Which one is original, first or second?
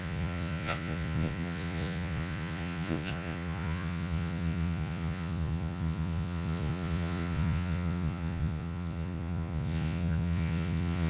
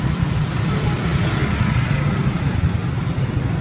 second